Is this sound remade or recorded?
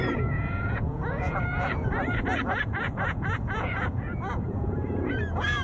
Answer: remade